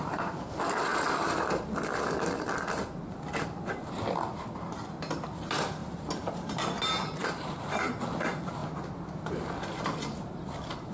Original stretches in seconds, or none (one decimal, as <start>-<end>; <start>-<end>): 0.0-0.9; 1.6-5.8; 6.7-7.2; 8.0-10.9